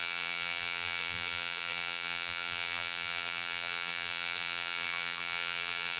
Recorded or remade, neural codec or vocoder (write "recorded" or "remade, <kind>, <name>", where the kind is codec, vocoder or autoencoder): remade, vocoder, BigVGAN v2